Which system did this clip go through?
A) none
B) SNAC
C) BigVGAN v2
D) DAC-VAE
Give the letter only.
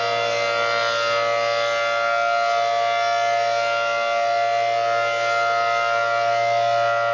A